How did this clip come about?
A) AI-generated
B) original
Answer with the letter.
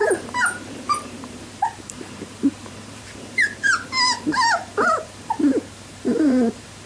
A